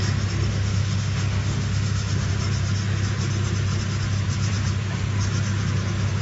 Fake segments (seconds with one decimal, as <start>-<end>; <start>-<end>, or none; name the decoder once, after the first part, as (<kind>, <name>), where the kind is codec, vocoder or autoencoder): 0.5-2.3 (autoencoder, DAC-VAE)